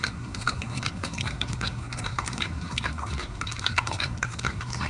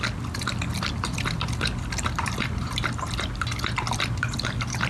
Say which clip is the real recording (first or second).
second